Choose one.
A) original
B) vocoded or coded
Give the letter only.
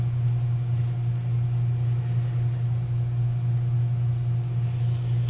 A